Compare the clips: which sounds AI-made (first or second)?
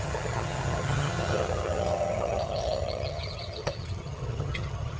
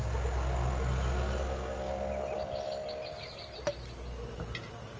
first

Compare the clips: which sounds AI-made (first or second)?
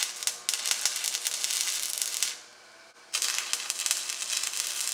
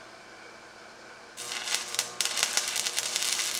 second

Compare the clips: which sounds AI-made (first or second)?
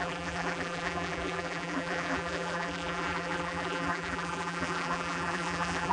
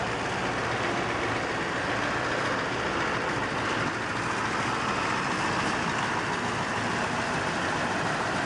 first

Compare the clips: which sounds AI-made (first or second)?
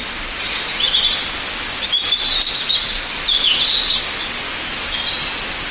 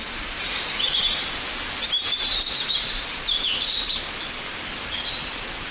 second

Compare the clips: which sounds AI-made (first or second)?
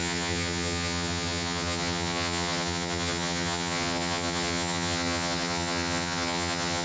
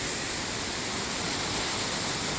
first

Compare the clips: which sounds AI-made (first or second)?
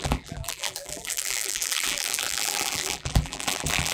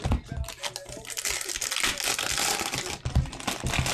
first